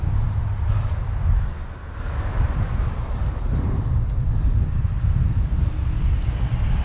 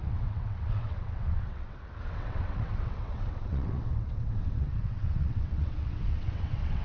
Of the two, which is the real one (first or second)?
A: first